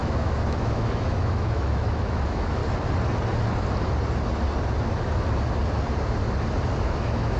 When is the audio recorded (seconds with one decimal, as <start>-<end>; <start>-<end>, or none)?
2.6-6.8